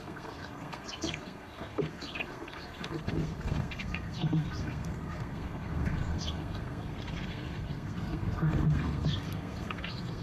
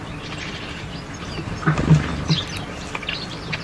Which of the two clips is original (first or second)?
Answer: second